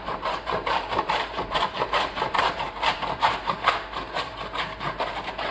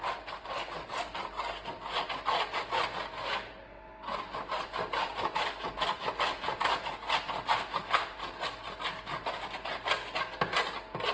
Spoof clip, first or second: first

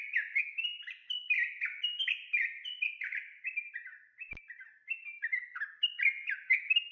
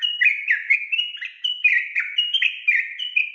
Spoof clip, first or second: second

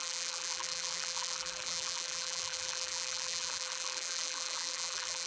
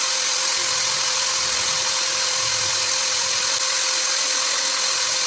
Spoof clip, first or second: first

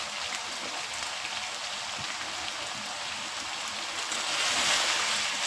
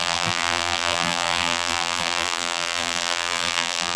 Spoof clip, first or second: second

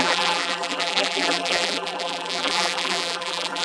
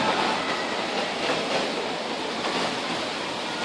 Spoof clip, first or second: first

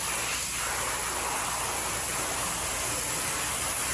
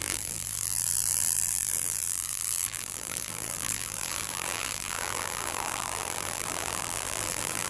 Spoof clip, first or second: second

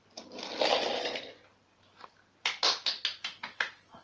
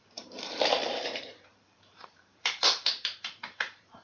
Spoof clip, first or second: second